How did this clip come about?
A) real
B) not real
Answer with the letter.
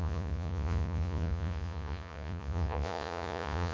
B